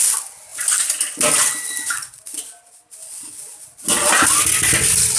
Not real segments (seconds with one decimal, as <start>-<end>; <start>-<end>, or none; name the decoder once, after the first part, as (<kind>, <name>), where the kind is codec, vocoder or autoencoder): none